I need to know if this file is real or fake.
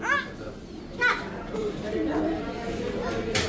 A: real